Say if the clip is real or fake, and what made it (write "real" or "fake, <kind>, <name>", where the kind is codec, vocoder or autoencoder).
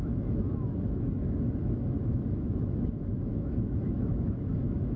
fake, autoencoder, DAC-VAE